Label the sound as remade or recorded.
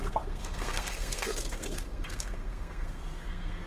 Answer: remade